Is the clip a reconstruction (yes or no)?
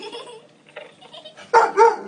no